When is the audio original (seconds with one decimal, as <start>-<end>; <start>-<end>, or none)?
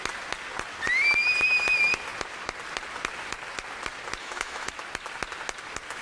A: 0.0-4.2; 4.7-6.0